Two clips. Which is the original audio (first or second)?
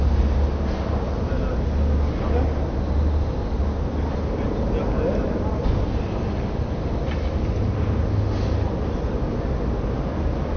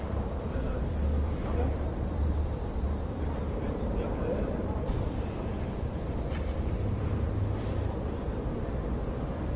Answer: first